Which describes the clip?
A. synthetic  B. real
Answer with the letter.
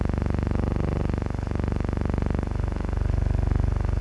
B